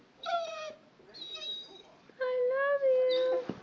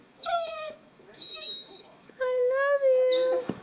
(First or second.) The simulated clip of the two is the second